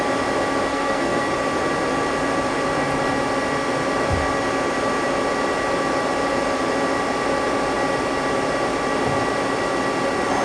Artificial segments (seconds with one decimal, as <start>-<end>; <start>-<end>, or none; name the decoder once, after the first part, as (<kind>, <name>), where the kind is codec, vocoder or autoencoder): 0.7-1.3 (codec, SNAC)